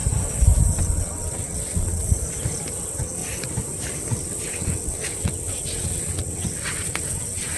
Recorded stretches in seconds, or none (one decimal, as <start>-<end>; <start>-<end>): 0.0-0.8; 2.0-2.7; 3.2-4.1